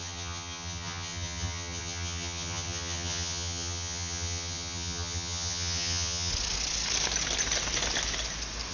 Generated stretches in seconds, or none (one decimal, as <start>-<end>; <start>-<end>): 0.0-6.3